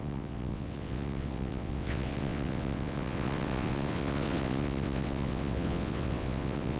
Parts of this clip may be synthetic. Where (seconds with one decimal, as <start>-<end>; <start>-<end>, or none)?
0.0-6.8